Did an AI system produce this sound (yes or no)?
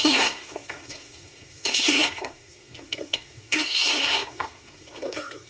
yes